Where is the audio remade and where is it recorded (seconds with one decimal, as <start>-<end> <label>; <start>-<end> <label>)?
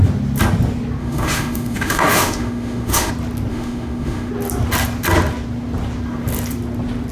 0.0-1.0 recorded; 1.0-3.1 remade; 3.1-3.5 recorded; 3.5-4.3 remade; 4.3-7.1 recorded